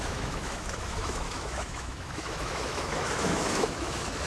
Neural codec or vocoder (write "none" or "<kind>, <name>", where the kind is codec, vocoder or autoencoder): autoencoder, DAC-VAE